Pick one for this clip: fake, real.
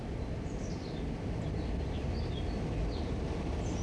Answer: fake